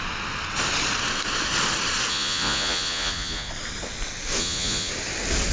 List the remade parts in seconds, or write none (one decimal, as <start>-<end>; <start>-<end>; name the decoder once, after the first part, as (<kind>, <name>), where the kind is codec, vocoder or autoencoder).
2.1-3.5 (vocoder, Vocos); 4.4-4.9